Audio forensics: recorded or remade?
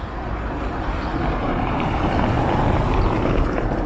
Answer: remade